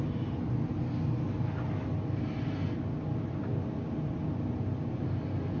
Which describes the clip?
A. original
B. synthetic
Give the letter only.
A